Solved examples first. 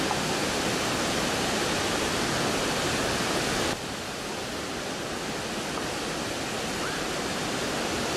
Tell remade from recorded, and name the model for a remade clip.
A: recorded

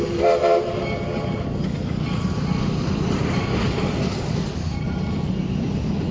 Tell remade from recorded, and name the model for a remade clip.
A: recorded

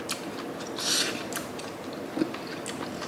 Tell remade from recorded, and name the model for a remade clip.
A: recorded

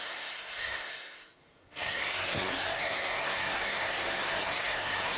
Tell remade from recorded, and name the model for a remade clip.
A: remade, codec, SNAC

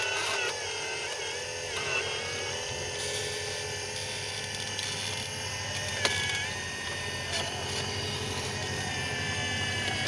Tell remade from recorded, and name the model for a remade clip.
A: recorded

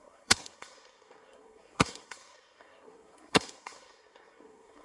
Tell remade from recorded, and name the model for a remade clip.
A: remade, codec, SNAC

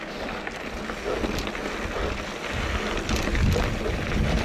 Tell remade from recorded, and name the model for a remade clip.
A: recorded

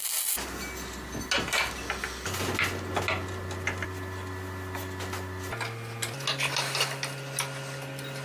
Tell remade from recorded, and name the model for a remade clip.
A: recorded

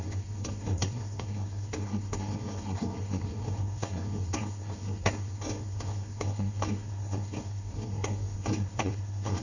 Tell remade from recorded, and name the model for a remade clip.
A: remade, codec, SNAC